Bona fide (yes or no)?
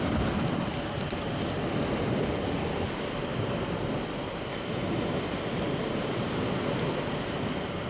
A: yes